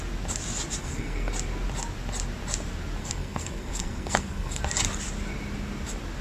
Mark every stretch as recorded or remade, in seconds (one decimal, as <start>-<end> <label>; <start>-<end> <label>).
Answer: 0.0-0.8 recorded; 0.8-1.3 remade; 1.3-3.0 recorded; 3.0-4.6 remade; 4.6-6.2 recorded